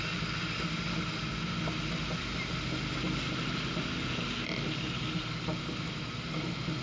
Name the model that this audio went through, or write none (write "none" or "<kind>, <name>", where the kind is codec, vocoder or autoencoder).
none